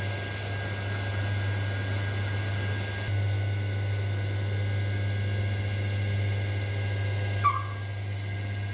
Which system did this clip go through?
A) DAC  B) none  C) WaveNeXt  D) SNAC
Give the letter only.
B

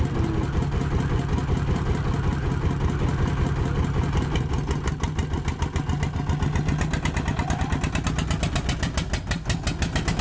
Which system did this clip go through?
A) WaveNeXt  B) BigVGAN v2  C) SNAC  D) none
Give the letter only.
D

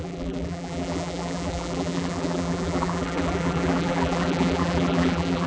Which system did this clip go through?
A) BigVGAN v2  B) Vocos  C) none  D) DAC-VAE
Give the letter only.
A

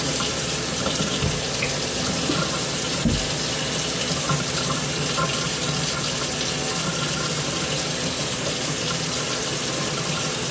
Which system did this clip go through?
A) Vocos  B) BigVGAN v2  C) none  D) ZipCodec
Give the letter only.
C